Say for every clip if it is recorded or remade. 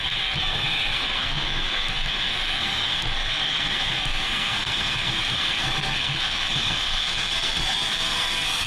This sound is remade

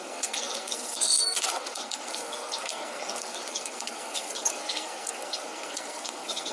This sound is remade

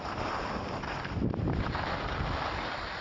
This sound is recorded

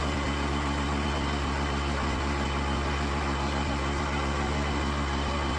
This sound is recorded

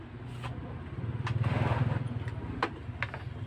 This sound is recorded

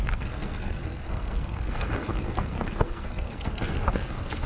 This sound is remade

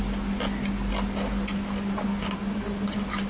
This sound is recorded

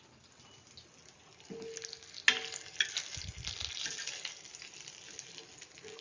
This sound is recorded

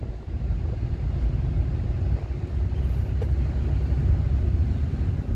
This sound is recorded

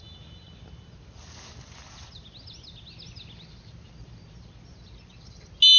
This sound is recorded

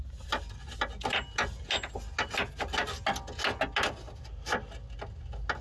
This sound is recorded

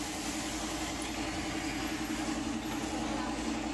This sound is recorded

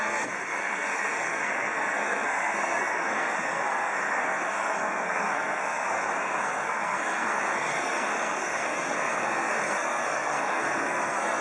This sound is remade